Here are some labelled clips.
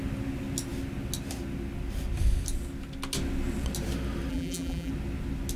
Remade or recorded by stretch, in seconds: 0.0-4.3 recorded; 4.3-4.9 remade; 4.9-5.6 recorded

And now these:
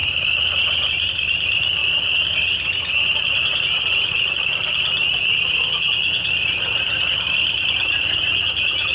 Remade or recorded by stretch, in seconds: 0.0-0.9 remade; 0.9-8.9 recorded

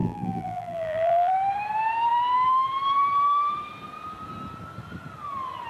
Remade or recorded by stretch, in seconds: 0.0-1.3 remade; 1.3-5.7 recorded

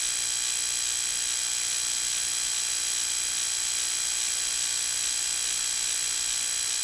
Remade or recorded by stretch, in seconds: 0.0-6.8 recorded